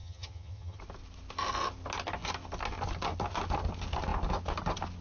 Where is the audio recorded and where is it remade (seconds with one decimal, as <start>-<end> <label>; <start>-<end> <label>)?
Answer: 0.0-0.8 remade; 0.8-5.0 recorded